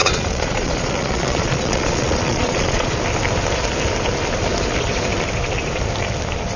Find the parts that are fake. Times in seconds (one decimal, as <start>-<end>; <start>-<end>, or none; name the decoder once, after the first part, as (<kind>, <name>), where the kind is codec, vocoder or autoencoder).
0.0-3.0 (vocoder, Vocos)